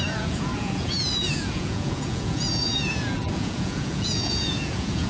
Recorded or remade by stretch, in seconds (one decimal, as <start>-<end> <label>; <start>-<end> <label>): 0.0-5.1 remade